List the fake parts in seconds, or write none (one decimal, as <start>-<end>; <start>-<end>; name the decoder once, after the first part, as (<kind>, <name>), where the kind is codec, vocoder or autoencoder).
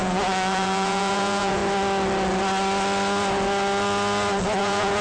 0.0-1.6 (vocoder, Vocos); 4.6-5.0